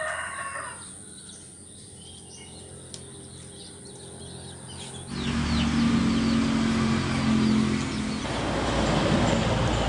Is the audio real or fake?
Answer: real